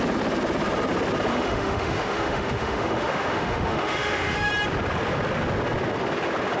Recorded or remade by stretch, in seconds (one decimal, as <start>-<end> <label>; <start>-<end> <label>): 0.0-1.3 recorded; 1.3-4.5 remade; 4.5-6.6 recorded